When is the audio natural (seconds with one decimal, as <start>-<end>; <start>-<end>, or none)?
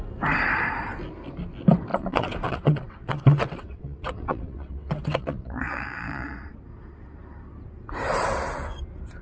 0.0-1.9; 6.5-9.2